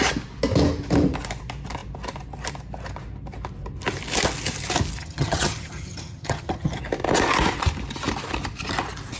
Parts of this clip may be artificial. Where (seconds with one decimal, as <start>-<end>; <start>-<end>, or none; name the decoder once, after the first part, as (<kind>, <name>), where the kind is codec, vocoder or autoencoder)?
5.0-6.8 (vocoder, HiFi-GAN)